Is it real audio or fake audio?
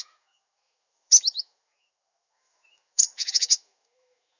fake